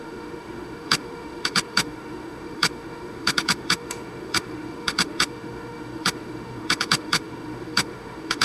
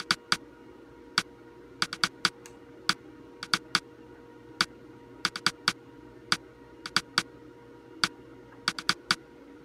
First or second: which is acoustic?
second